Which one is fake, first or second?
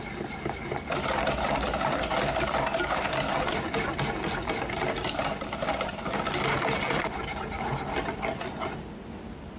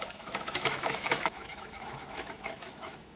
second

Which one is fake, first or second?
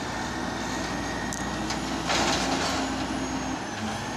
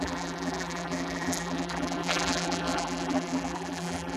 second